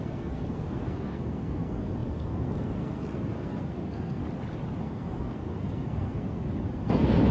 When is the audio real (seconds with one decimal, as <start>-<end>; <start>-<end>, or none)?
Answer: 4.2-4.8

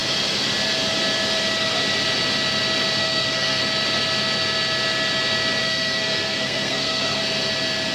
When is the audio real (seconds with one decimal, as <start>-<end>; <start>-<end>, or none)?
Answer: 0.0-3.0; 3.6-5.6; 7.2-7.9

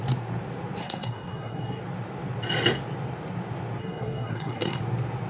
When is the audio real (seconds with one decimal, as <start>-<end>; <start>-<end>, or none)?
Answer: 0.0-0.8; 1.8-3.8; 4.8-5.3

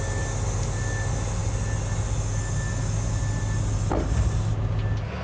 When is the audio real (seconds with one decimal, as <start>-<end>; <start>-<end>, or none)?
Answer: 0.0-5.2

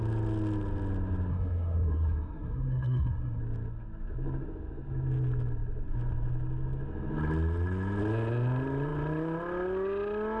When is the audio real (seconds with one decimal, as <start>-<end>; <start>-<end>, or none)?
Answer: 0.0-1.3; 3.4-10.4

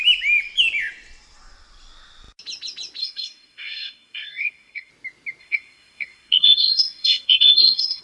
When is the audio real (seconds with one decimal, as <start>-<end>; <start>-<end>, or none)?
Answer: 0.0-3.0; 4.9-5.4

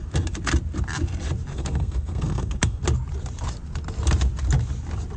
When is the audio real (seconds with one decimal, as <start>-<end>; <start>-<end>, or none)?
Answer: 0.0-1.5; 2.8-5.2

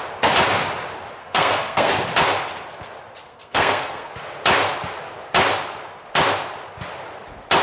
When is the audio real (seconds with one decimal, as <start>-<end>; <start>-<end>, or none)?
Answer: 0.0-1.2; 1.9-3.3; 4.1-7.6